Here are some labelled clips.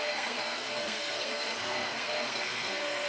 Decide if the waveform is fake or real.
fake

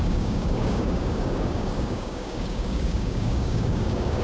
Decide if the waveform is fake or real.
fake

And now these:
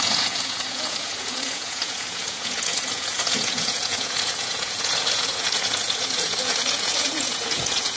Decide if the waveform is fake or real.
fake